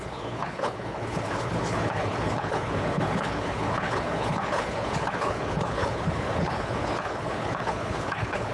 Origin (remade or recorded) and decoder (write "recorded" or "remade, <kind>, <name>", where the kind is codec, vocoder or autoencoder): remade, codec, HILCodec